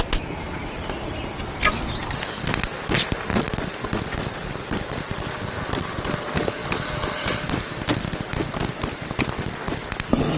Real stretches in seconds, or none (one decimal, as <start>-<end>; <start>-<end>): 0.0-6.6; 7.4-10.4